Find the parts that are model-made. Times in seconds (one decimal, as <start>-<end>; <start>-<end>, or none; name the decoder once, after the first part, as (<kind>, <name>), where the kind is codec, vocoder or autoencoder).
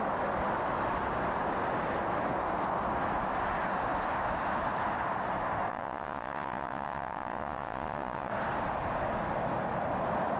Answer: 5.7-8.3 (vocoder, Vocos)